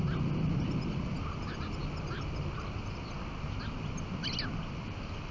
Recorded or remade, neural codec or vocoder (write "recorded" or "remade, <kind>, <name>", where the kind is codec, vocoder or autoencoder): recorded